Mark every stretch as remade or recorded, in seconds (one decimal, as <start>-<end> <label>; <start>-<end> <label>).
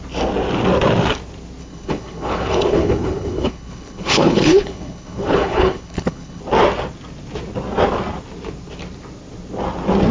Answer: 0.0-1.6 recorded; 1.6-6.4 remade; 6.4-10.1 recorded